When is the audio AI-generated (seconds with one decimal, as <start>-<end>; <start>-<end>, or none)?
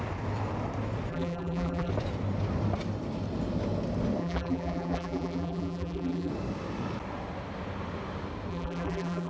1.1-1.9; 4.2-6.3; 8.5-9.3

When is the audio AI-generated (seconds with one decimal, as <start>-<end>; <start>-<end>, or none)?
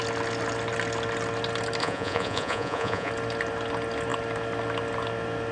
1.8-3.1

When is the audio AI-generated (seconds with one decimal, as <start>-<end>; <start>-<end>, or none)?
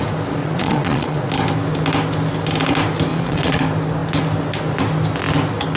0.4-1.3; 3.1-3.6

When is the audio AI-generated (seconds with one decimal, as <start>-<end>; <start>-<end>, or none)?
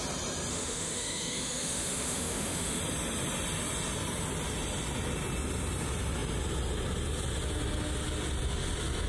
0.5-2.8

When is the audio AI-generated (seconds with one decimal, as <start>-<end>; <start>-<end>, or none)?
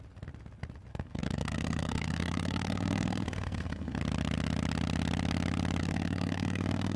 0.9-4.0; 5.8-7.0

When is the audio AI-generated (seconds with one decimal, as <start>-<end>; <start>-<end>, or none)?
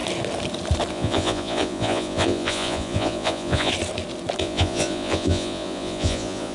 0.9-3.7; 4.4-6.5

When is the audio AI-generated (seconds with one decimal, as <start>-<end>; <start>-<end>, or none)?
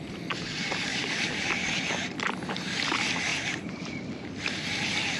0.9-1.5